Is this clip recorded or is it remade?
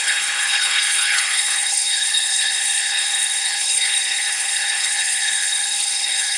remade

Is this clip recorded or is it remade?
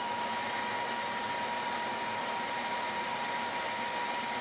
remade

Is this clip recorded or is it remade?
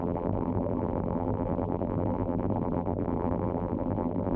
remade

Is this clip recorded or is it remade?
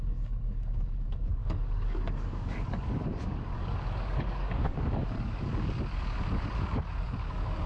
remade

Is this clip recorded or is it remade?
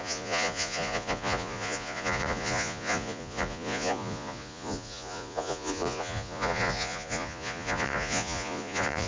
remade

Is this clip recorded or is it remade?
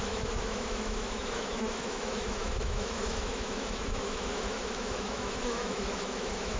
remade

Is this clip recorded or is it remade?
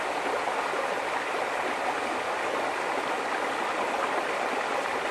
recorded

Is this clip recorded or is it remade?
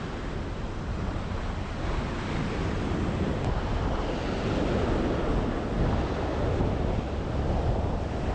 recorded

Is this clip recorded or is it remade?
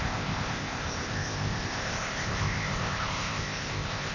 remade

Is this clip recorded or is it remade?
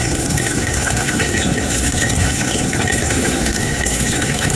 remade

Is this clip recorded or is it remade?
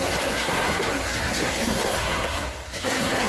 remade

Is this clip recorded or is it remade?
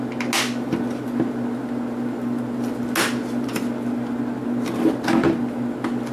recorded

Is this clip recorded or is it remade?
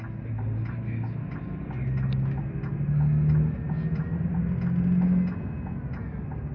recorded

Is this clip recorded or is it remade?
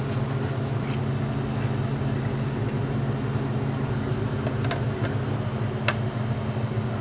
recorded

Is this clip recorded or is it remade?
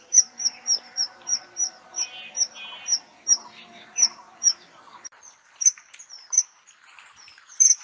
remade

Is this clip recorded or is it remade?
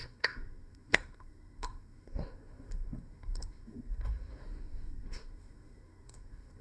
remade